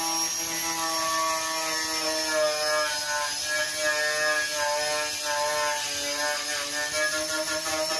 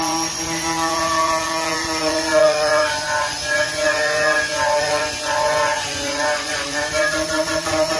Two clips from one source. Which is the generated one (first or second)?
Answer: second